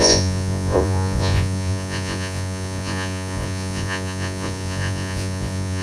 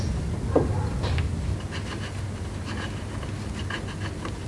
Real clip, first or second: second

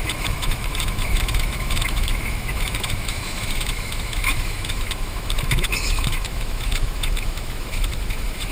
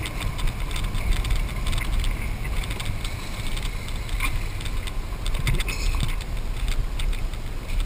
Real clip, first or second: second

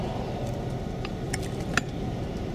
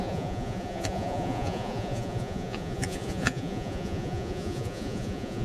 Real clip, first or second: first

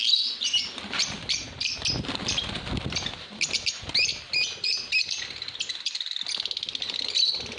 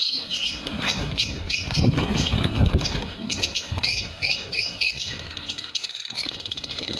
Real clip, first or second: first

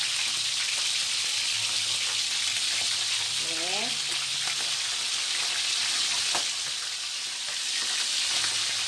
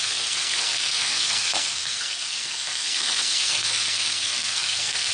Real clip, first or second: first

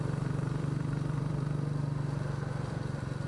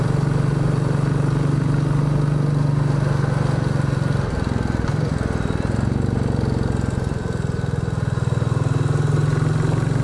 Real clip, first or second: second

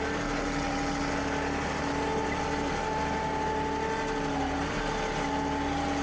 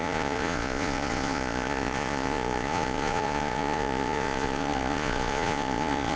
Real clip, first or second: first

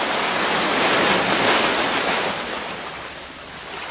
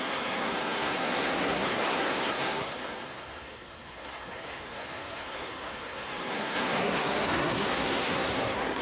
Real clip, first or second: first